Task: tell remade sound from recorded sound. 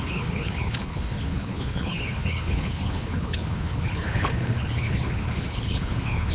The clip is remade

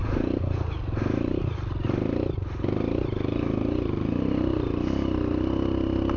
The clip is recorded